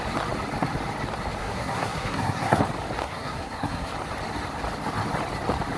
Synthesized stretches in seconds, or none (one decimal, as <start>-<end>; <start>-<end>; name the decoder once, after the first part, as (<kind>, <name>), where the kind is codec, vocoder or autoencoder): 1.4-2.6 (codec, SNAC); 3.0-3.9

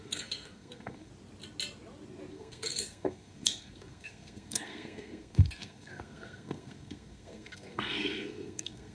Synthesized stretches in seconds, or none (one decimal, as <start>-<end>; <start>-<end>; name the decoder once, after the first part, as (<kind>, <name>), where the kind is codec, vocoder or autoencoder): 0.0-1.1 (codec, SNAC); 2.3-8.9